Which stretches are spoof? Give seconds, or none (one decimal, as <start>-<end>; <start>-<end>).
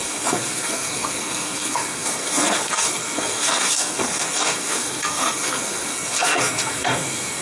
0.0-7.4